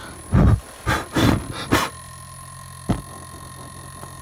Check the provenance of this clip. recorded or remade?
recorded